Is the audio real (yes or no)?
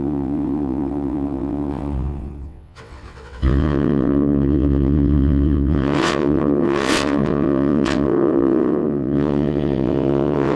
no